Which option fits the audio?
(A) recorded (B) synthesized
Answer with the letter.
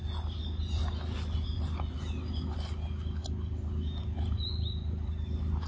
A